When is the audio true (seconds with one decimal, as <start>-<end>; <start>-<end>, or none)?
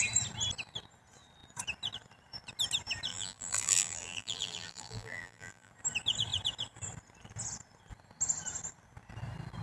0.0-3.1; 5.7-9.6